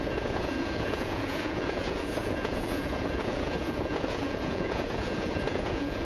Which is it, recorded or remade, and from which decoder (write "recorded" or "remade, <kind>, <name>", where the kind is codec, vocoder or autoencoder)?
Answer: remade, vocoder, Vocos